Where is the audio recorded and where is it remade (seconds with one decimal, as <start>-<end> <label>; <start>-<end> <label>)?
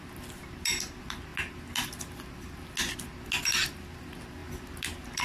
0.0-5.2 recorded